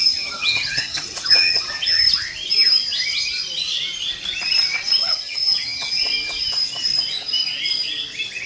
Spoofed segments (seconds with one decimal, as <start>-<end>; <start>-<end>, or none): 0.0-2.0; 5.0-6.0